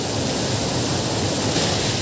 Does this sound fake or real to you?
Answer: real